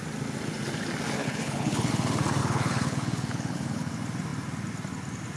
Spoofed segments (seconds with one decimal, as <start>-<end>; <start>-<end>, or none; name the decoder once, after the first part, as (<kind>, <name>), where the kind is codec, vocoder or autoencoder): 1.2-1.9 (codec, HILCodec); 2.4-3.9